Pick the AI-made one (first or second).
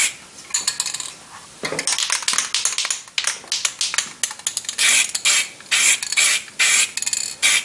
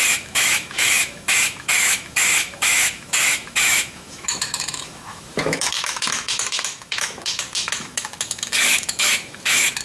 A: second